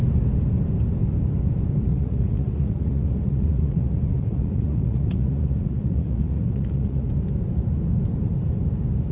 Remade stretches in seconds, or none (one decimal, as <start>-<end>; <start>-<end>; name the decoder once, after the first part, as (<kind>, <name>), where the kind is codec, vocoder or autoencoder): 1.9-7.1 (vocoder, Vocos)